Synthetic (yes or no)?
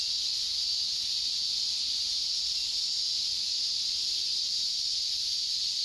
no